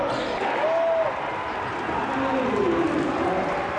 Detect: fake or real real